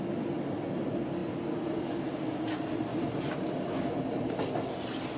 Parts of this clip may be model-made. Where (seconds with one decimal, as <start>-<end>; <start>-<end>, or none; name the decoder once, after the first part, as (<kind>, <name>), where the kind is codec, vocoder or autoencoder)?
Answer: 1.2-2.0 (vocoder, BigVGAN v2); 2.9-4.4